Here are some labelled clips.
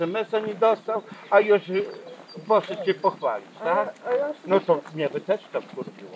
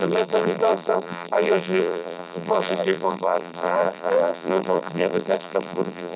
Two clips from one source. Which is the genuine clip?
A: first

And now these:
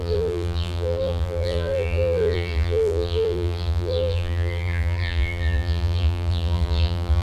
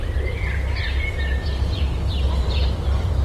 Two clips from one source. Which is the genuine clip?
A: second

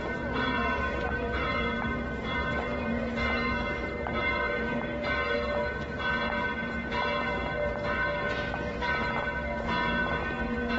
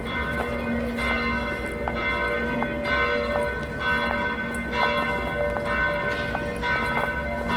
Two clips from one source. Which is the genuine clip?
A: second